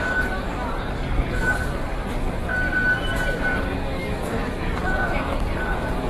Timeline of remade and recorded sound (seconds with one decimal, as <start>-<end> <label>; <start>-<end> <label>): 0.0-2.4 remade; 2.4-3.5 recorded; 3.5-6.1 remade